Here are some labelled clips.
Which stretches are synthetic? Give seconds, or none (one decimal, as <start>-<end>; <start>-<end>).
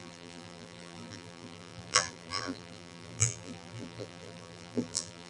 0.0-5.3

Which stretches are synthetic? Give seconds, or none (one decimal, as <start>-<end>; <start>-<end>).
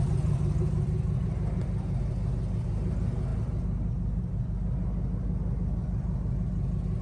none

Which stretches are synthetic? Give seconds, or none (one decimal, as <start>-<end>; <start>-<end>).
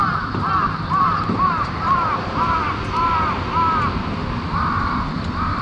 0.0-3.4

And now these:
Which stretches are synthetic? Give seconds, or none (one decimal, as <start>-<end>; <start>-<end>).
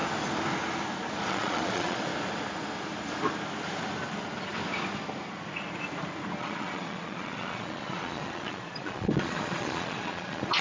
1.3-2.1; 6.4-10.6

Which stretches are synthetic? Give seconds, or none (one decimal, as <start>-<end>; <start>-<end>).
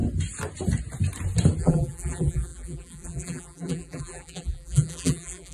1.6-5.5